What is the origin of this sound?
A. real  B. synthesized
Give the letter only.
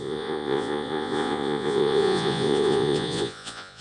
B